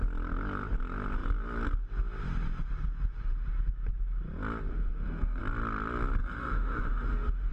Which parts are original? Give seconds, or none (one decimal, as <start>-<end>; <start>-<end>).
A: 0.0-4.7; 5.4-6.2